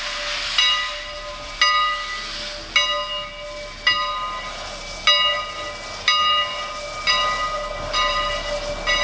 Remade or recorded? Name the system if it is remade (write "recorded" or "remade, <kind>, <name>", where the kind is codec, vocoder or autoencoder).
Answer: recorded